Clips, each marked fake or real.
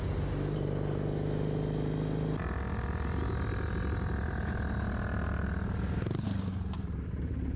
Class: real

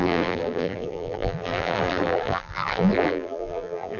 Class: fake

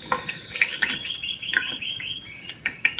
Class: fake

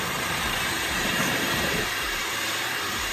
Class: fake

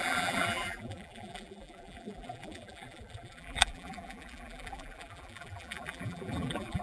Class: fake